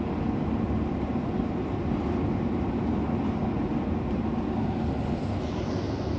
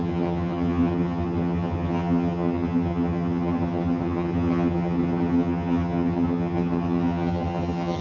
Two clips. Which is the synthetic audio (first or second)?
second